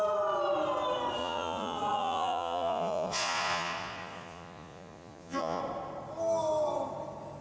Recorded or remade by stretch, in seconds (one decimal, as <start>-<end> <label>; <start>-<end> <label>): 0.0-1.2 recorded; 1.2-5.6 remade; 5.6-7.4 recorded